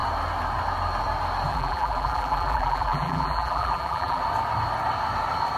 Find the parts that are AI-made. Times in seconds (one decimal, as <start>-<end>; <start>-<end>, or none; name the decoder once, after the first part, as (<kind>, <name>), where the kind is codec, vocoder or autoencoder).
1.5-4.2 (vocoder, BigVGAN v2)